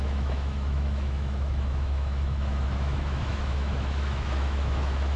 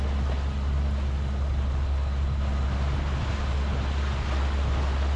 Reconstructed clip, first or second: first